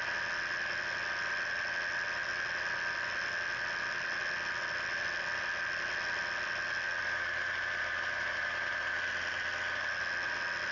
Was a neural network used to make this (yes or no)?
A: no